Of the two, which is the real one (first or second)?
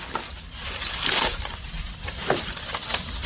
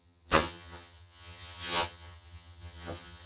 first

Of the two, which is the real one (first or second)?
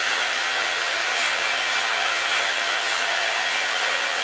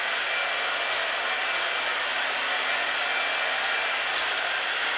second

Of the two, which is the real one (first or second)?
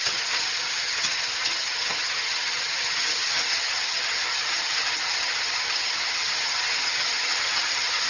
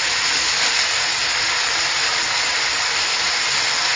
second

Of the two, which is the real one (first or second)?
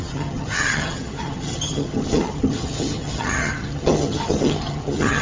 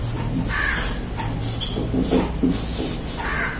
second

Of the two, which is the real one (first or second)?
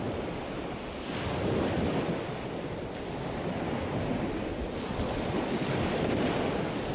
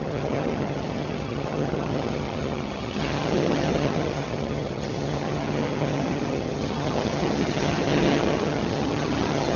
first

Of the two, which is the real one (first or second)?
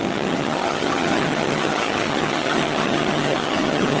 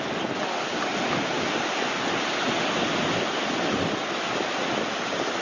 second